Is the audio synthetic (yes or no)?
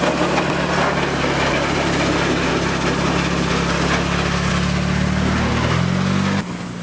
no